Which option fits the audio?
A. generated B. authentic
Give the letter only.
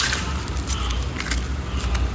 B